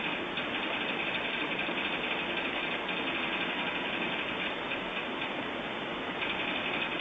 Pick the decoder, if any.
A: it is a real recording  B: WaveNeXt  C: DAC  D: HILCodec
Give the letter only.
A